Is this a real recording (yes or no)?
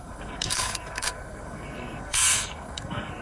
no